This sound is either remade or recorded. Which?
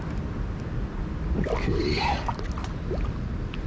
recorded